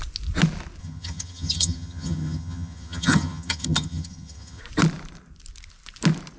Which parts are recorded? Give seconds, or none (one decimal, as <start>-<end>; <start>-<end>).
0.0-0.8; 4.6-6.4